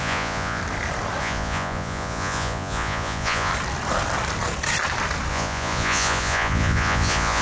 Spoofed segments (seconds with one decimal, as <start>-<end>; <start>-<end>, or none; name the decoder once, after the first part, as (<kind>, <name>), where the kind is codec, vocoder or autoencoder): 0.0-0.6 (vocoder, Vocos); 1.2-3.5; 5.3-7.4